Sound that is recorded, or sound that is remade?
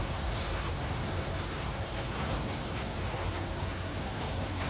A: remade